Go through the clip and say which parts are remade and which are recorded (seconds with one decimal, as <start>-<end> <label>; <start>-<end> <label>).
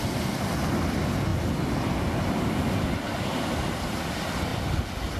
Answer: 0.0-5.2 recorded